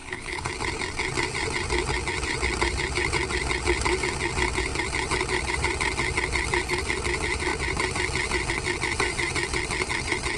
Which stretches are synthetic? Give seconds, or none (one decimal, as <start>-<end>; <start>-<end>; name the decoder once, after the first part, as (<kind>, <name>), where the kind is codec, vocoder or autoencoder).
0.0-0.5 (codec, HILCodec)